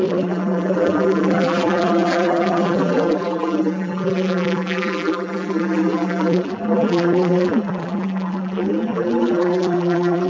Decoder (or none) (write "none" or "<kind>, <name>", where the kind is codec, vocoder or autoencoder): vocoder, BigVGAN v2